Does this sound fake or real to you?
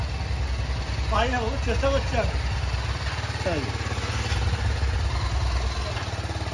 real